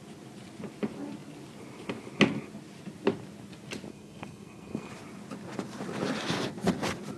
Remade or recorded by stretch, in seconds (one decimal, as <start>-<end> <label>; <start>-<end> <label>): 0.0-3.9 recorded; 3.9-4.9 remade; 4.9-7.2 recorded